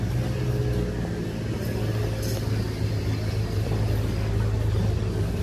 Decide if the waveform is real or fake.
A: real